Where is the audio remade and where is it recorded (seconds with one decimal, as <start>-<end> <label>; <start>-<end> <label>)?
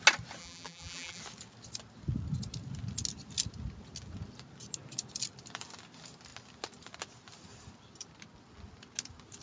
0.0-0.4 recorded; 0.4-1.2 remade; 1.2-9.4 recorded